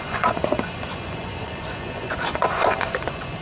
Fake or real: fake